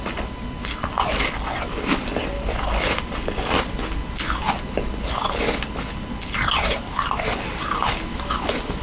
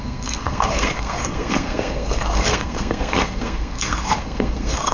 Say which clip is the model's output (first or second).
second